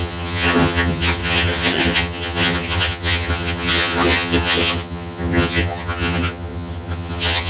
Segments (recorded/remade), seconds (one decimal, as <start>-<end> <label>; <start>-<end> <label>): 0.0-7.5 remade